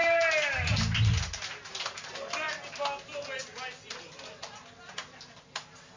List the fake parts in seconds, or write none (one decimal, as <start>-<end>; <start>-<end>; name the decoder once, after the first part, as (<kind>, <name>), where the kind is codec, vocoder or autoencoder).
none